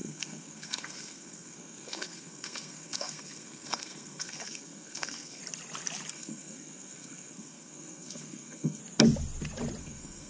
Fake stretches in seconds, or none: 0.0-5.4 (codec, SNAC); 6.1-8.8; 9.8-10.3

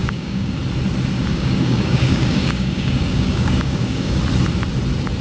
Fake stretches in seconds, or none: 0.0-0.6 (codec, DAC); 1.3-4.2

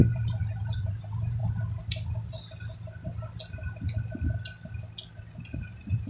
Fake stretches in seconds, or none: 0.0-1.4 (vocoder, BigVGAN v2); 5.1-6.1

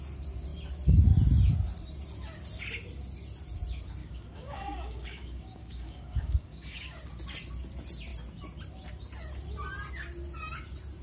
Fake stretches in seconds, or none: 4.0-7.0 (codec, DAC)

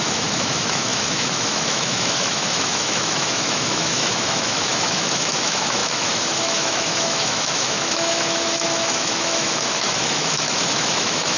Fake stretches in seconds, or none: 0.0-11.4 (autoencoder, DAC-VAE)